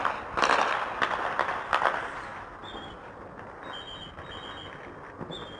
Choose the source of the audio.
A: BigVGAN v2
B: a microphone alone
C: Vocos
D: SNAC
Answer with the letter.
B